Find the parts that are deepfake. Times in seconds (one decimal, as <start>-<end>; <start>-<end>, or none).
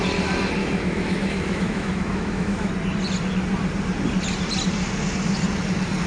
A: 0.6-2.7